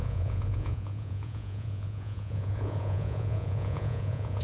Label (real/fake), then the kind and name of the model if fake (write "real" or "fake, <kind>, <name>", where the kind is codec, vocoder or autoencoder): fake, vocoder, Vocos